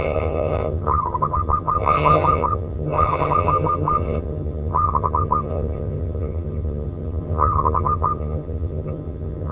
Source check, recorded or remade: remade